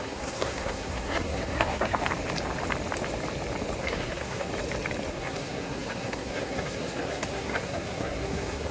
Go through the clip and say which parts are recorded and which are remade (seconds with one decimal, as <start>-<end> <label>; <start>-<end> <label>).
0.0-2.0 remade; 2.0-3.8 recorded; 3.8-4.5 remade; 4.5-5.1 recorded; 5.1-8.7 remade